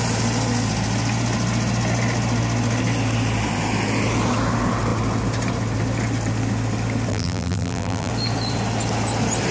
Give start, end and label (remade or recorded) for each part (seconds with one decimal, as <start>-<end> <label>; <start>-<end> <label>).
0.0-7.1 recorded; 7.1-8.1 remade; 8.1-9.5 recorded